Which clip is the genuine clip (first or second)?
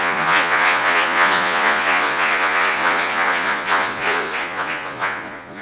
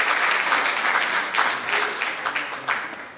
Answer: second